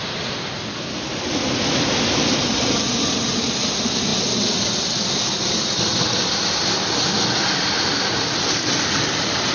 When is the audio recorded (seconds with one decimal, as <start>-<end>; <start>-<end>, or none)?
0.0-9.5